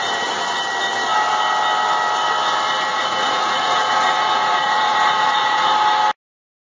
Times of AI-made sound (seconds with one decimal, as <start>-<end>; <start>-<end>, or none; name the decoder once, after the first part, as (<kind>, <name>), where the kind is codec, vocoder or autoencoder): 2.9-5.7 (vocoder, Vocos)